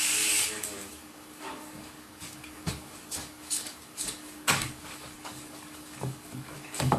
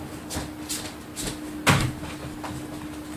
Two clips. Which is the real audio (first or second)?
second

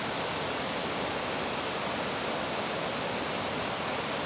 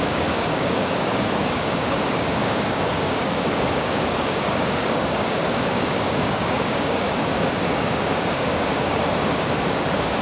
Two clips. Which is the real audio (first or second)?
first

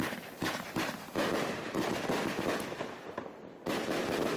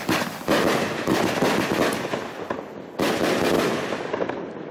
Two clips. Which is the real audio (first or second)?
second